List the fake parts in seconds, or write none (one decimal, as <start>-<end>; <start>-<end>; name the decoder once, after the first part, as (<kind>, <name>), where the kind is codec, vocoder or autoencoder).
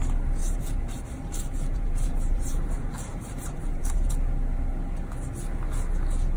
0.4-4.1 (vocoder, BigVGAN v2)